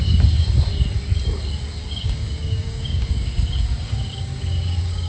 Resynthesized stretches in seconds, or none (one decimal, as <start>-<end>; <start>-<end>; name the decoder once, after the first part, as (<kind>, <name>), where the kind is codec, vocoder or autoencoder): 1.8-5.1 (codec, DAC)